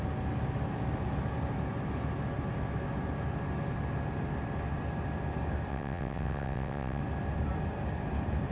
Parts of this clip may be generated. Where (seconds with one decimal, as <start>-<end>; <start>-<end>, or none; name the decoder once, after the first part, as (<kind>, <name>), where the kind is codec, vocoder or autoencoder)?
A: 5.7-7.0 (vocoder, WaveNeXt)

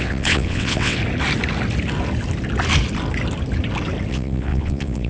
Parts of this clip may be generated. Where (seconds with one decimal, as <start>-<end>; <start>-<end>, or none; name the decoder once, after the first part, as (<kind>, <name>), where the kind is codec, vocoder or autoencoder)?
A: 0.0-1.0 (vocoder, WaveNeXt); 4.1-5.1

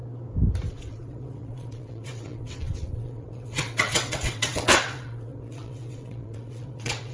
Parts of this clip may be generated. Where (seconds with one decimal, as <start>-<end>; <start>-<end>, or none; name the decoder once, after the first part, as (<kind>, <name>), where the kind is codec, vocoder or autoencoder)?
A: 0.7-7.1 (vocoder, WaveNeXt)

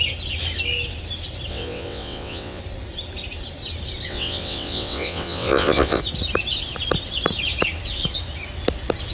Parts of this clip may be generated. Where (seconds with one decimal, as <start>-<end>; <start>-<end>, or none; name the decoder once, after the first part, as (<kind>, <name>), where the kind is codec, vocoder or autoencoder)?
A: 1.5-2.6 (vocoder, WaveNeXt); 4.1-6.0